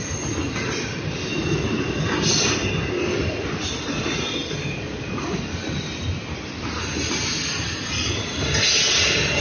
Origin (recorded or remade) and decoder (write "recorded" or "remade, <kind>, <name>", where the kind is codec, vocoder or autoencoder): recorded